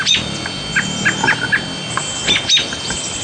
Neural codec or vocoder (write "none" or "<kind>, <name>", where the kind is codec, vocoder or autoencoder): none